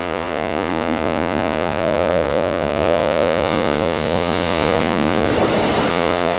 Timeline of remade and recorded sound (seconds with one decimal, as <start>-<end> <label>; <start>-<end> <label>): 0.0-5.3 remade; 5.3-5.9 recorded; 5.9-6.4 remade